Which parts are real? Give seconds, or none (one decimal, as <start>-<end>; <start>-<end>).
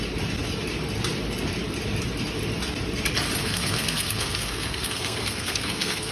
0.0-3.4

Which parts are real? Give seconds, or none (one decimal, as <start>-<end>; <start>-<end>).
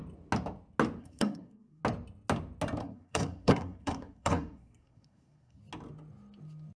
0.0-1.0; 1.8-2.8; 5.6-6.8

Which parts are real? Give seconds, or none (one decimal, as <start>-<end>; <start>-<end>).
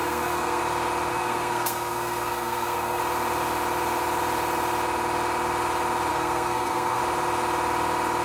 0.6-1.1; 3.0-6.1; 7.0-8.2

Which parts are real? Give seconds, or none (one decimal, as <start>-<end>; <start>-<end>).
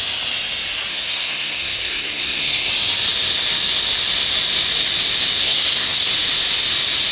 0.0-0.9; 2.7-5.4; 6.1-7.1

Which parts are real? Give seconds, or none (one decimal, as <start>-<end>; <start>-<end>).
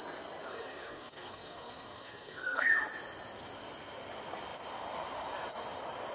0.0-0.5; 2.7-6.1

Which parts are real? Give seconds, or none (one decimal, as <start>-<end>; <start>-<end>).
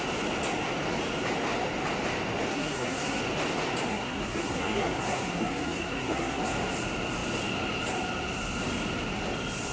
0.0-2.5; 3.2-3.9; 6.4-9.7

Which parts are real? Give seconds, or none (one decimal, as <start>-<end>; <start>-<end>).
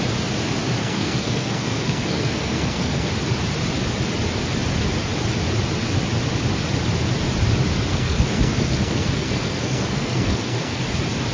0.0-0.8; 3.1-7.9; 10.8-11.3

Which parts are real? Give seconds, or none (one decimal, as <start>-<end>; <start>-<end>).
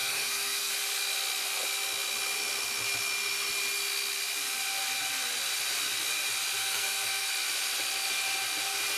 0.7-6.6; 7.3-9.0